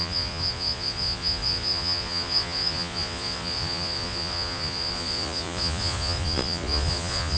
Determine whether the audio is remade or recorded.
remade